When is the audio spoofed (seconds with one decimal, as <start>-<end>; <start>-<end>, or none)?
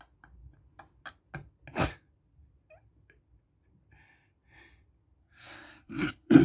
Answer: 5.2-6.4